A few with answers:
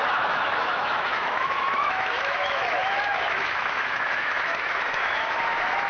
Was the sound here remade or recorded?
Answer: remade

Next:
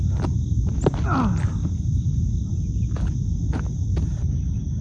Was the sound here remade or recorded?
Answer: recorded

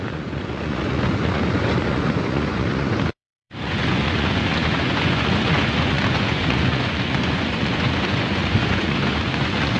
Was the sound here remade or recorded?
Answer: remade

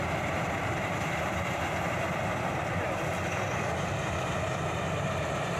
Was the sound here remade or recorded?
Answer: remade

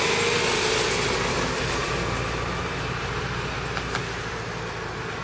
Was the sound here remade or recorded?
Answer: recorded